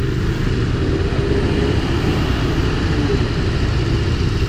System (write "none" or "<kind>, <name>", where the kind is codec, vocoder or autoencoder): none